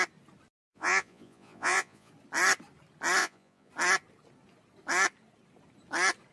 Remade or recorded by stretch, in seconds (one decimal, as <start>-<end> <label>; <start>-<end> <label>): 0.0-0.7 recorded; 0.7-2.1 remade; 2.1-3.2 recorded; 3.2-3.7 remade; 3.7-6.3 recorded